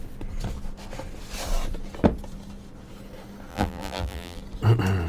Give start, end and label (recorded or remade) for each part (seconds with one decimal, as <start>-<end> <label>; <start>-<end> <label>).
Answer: 0.0-3.5 recorded; 3.5-4.4 remade; 4.4-5.1 recorded